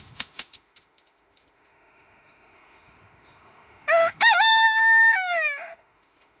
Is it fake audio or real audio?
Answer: fake